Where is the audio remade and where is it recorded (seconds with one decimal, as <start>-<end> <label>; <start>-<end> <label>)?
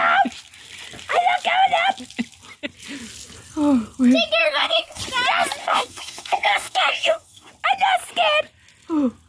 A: 0.0-4.4 recorded; 4.4-5.0 remade; 5.0-5.6 recorded; 5.6-7.5 remade; 7.5-9.3 recorded